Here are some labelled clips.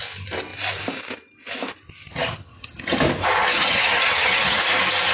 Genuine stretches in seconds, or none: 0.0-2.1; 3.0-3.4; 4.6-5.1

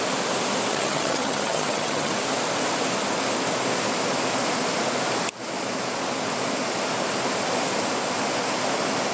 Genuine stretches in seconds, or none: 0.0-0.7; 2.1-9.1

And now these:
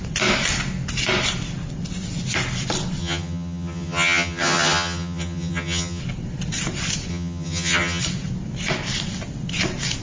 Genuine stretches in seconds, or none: 0.0-3.0; 6.0-7.1; 8.0-10.0